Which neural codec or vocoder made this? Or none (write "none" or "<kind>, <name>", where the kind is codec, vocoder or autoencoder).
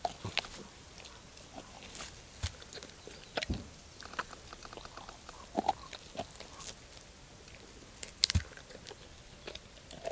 none